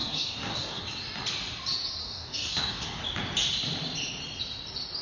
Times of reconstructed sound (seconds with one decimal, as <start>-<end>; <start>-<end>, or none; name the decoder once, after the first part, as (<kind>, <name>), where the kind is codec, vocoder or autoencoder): 0.0-0.8 (codec, DAC); 2.0-3.0